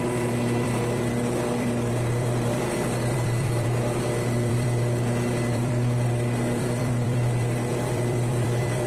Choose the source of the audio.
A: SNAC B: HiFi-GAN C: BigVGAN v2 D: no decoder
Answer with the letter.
C